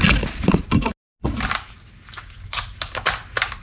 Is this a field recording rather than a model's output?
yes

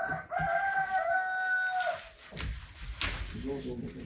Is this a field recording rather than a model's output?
yes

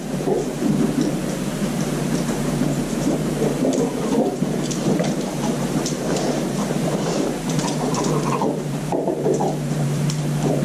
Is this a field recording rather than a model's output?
no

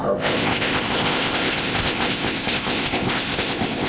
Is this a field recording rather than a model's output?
no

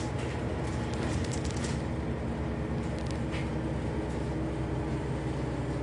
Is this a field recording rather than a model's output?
yes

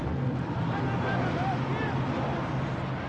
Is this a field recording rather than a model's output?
yes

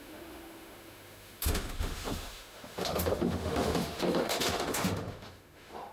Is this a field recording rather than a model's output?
no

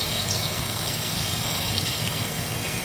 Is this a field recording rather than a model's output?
no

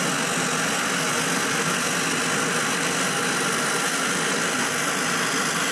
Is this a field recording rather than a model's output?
yes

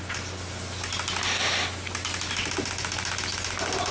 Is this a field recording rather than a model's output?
yes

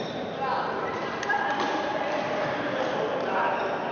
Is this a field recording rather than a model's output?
yes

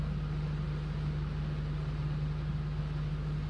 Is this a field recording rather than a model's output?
yes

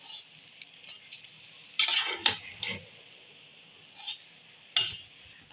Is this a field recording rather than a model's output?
yes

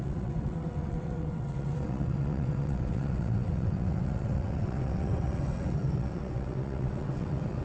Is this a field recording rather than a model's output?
no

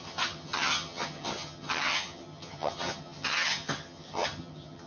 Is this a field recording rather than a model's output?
no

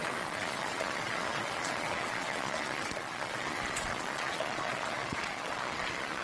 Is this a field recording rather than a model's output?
no